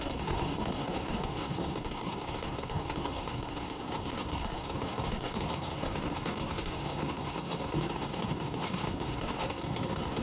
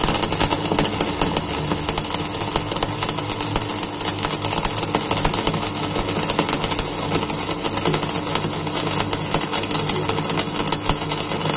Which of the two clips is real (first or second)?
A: second